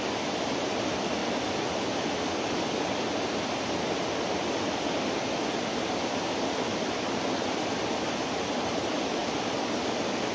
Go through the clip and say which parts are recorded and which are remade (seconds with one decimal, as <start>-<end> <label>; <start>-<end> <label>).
0.0-10.3 recorded